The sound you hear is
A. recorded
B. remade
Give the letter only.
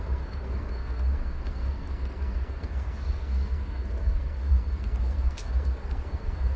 B